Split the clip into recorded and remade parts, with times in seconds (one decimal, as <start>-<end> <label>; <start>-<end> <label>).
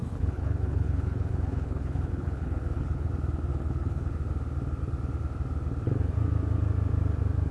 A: 0.0-3.1 remade; 3.1-3.5 recorded; 3.5-4.1 remade; 4.1-7.5 recorded